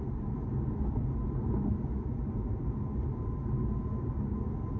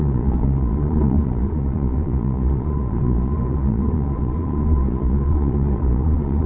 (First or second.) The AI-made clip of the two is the second